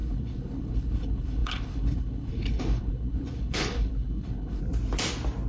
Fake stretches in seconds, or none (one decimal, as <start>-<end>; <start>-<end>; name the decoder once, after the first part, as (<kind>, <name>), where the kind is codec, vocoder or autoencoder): 0.0-4.6 (codec, HILCodec)